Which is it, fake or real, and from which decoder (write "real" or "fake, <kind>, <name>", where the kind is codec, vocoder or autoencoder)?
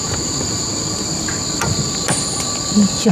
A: real